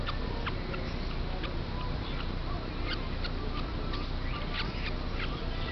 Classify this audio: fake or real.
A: real